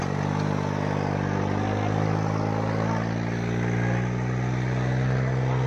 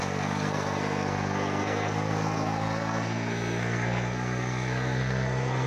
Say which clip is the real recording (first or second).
first